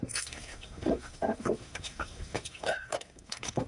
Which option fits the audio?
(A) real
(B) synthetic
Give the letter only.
B